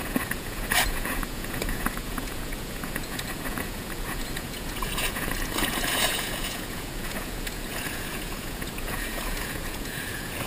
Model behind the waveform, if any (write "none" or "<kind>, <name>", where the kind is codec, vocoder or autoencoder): vocoder, Vocos